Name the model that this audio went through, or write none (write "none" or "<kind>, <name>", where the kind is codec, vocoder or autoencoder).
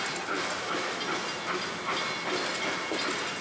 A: none